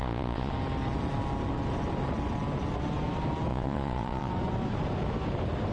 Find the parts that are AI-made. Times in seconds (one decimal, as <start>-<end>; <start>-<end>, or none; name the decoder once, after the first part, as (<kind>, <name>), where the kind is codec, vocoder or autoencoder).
0.0-0.5 (vocoder, Vocos); 3.5-4.3